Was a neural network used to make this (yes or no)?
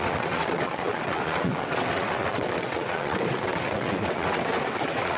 yes